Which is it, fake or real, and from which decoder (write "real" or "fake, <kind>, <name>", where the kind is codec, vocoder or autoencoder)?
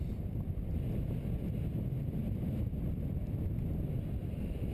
real